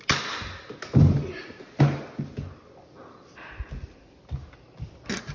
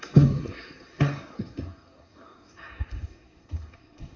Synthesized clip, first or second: second